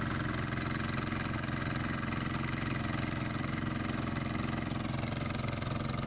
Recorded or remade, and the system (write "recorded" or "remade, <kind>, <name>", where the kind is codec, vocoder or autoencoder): recorded